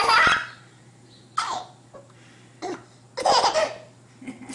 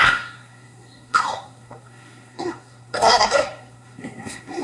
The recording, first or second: first